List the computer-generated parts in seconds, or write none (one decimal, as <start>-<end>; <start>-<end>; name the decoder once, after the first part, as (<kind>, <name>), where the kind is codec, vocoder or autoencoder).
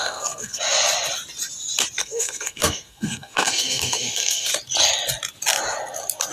0.0-0.6 (codec, SNAC); 2.0-4.5